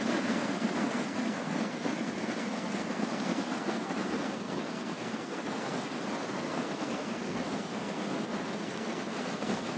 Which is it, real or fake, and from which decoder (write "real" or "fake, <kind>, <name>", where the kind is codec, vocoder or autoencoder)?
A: fake, codec, SNAC